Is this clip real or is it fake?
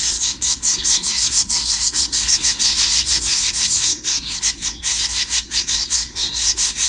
fake